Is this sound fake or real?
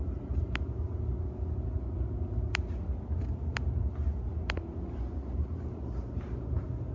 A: real